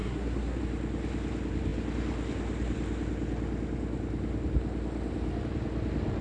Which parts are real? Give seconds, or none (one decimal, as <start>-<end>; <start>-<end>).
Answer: 0.6-6.2